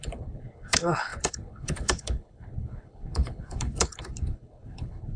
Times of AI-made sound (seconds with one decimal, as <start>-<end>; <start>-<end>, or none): 0.0-5.2